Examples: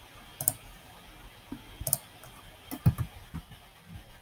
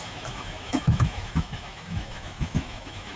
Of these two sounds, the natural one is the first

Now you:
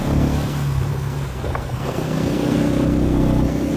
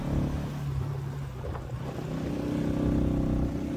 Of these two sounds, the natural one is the second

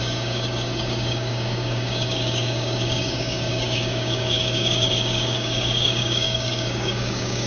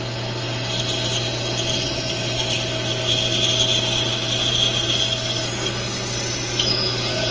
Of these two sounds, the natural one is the second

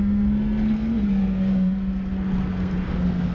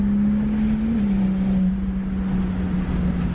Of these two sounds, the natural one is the second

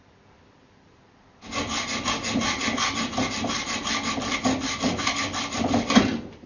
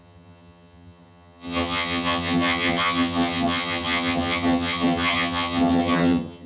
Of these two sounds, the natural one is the first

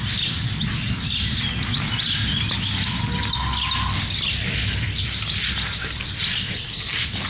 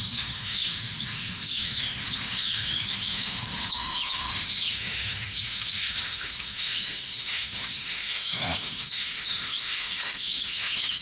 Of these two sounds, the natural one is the first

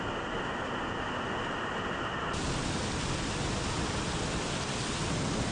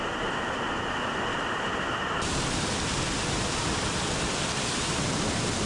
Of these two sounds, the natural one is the first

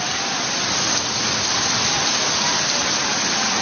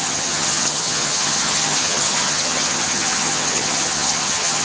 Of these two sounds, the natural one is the first